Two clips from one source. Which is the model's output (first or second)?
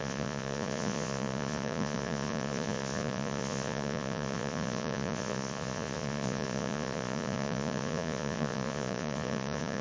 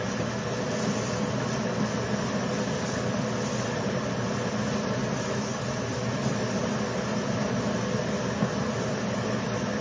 first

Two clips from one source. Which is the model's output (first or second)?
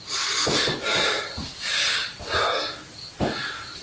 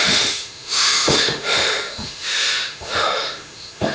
second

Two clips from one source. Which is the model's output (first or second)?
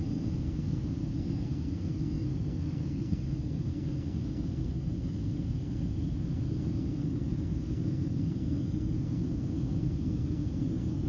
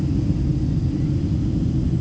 first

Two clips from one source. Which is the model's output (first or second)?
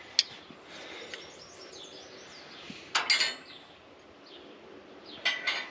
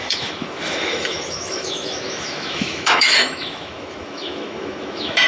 second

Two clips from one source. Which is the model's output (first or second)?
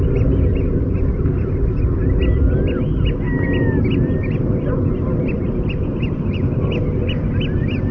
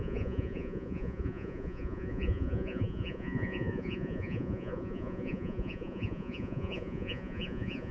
second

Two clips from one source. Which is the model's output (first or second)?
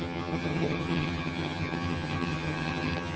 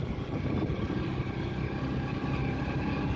first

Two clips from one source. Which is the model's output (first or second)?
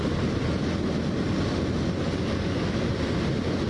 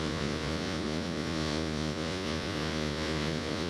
second